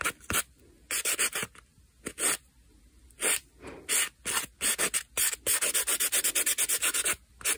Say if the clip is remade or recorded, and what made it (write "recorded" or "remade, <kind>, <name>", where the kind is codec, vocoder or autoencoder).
recorded